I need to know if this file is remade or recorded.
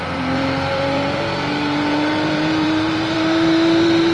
remade